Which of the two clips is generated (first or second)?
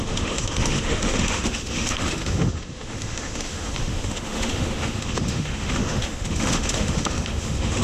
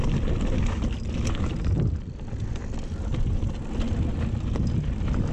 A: first